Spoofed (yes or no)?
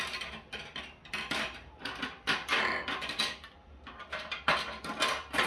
no